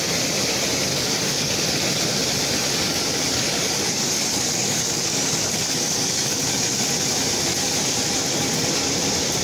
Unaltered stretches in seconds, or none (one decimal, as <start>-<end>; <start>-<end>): 0.0-0.9; 1.5-3.3; 6.4-9.4